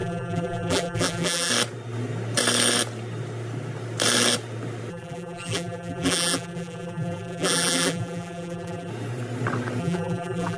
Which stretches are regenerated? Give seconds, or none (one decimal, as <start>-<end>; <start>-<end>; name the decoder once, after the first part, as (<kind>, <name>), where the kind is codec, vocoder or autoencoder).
0.0-1.5 (vocoder, BigVGAN v2); 4.9-8.9; 9.8-10.6